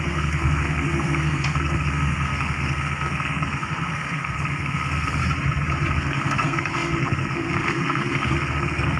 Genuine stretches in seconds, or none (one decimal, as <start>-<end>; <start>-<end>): 5.2-5.9